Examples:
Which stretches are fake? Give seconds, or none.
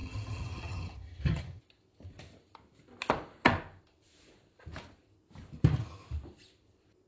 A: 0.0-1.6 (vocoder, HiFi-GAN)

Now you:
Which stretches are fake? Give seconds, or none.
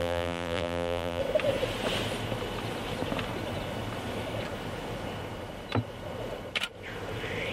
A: 0.0-1.2 (vocoder, BigVGAN v2)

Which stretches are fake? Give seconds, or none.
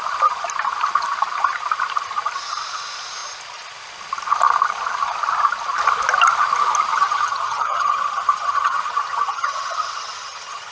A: 6.9-10.7 (vocoder, HiFi-GAN)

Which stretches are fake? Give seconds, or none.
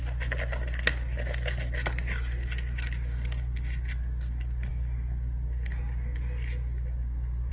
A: none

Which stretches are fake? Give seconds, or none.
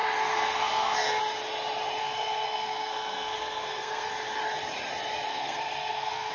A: 0.0-1.2 (codec, SNAC); 2.0-4.1; 5.3-6.3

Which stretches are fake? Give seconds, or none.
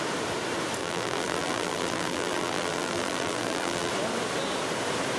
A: 0.8-3.9 (vocoder, BigVGAN v2)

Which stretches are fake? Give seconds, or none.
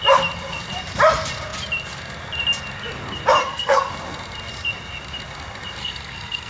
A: 3.4-3.9 (codec, SNAC); 5.8-6.5